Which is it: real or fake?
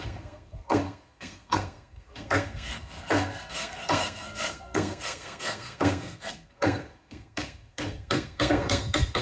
fake